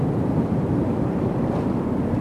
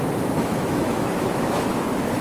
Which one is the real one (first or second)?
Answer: first